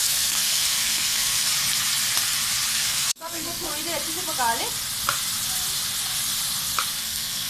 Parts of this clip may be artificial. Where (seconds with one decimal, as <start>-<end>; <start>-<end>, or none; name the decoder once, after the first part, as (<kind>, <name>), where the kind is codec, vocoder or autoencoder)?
0.0-1.5 (codec, SNAC); 2.7-3.7; 7.0-7.5